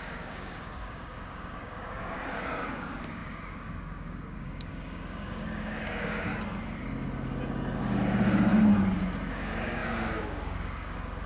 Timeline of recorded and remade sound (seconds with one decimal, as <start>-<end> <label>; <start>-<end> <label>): 0.0-6.3 remade; 6.3-9.3 recorded; 9.3-11.3 remade